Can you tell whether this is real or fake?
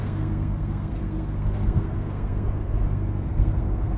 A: fake